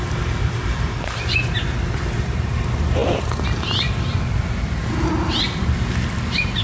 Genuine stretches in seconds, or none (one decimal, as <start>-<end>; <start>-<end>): 0.0-6.6